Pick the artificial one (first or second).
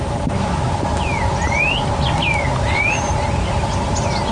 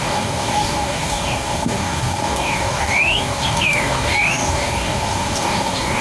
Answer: second